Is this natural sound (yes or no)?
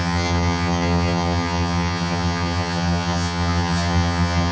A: no